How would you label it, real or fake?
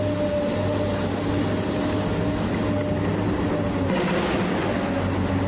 real